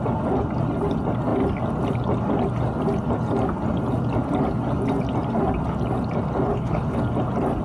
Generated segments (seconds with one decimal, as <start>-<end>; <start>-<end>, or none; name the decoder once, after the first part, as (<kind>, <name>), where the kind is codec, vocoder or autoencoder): 6.5-7.0 (codec, HILCodec)